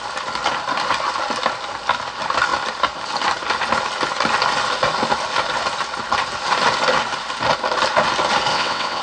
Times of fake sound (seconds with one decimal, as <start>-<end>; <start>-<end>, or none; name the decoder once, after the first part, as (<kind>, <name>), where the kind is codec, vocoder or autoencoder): 8.5-9.0 (vocoder, WaveNeXt)

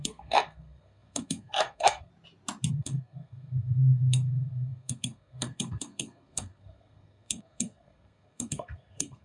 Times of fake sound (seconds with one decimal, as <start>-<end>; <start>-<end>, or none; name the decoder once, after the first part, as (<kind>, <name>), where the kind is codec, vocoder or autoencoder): 0.0-2.1 (codec, SNAC); 2.7-9.2

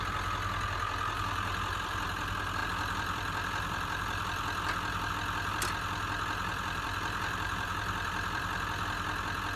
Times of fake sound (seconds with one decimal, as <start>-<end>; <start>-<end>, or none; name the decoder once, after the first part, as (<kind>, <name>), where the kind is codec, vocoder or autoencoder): 2.6-5.1 (vocoder, BigVGAN v2); 6.5-8.5

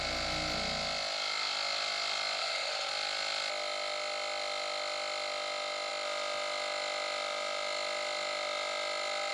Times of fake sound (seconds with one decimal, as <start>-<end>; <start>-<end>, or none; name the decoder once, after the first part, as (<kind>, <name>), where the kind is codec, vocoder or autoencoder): 2.4-2.9 (autoencoder, DAC-VAE)

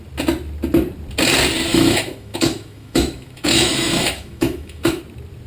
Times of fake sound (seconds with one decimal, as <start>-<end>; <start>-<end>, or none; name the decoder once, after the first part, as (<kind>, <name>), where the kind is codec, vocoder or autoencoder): 1.7-5.0 (autoencoder, DAC-VAE)

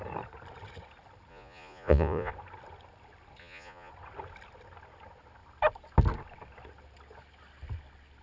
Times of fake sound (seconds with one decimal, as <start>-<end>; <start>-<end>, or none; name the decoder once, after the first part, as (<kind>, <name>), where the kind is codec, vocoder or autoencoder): 1.3-2.3 (vocoder, Vocos); 3.4-3.9